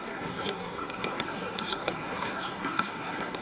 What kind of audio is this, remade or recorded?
remade